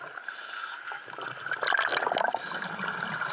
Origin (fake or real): real